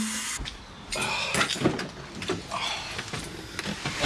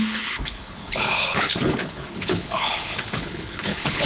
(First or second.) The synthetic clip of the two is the second